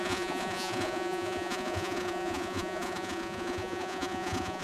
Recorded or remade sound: remade